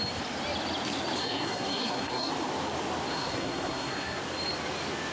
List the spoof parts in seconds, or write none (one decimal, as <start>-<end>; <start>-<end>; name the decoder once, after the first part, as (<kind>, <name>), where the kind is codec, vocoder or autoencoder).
1.2-2.3 (codec, SNAC); 3.1-4.2

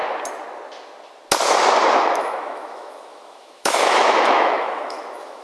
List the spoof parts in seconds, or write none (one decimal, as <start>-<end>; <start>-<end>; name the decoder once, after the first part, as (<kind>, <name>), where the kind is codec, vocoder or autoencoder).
1.9-5.4 (autoencoder, DAC-VAE)

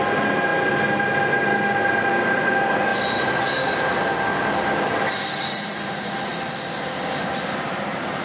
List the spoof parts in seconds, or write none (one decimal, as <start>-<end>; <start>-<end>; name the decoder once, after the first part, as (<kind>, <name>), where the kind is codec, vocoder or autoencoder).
none

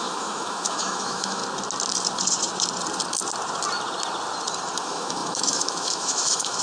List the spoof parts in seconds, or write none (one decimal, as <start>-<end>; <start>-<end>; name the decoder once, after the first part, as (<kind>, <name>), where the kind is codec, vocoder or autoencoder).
0.0-1.4 (autoencoder, DAC-VAE); 4.8-6.6

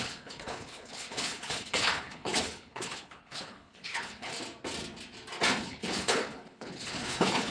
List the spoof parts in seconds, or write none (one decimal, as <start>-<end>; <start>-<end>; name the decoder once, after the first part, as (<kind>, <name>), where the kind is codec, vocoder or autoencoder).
0.0-4.3 (codec, HILCodec); 5.6-7.5